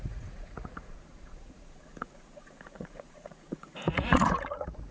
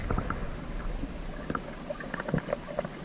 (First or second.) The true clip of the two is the second